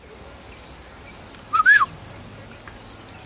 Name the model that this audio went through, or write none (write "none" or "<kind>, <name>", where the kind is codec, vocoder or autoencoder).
none